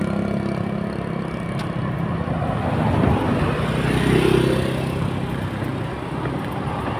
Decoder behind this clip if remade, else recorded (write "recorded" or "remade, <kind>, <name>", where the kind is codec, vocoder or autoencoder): recorded